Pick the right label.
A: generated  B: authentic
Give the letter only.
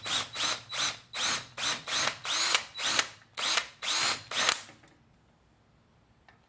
B